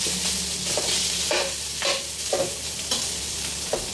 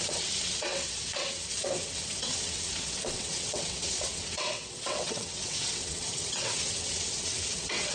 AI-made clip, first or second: second